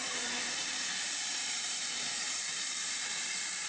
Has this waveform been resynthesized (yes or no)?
yes